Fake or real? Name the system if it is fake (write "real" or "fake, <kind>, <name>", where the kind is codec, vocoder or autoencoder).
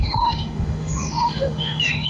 fake, autoencoder, DAC-VAE